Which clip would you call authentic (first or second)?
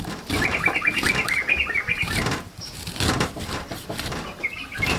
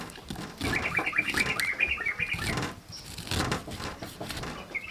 second